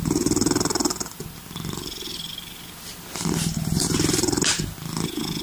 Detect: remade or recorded recorded